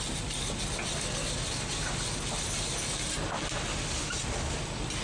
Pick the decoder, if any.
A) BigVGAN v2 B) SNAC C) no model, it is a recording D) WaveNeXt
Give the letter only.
C